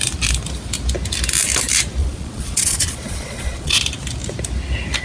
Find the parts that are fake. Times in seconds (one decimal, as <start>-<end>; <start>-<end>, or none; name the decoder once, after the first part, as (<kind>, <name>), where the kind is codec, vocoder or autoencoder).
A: 2.0-3.8 (vocoder, Vocos)